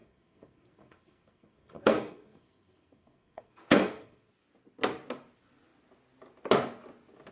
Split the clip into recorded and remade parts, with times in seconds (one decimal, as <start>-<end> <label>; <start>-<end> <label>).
0.0-4.3 remade; 4.3-7.3 recorded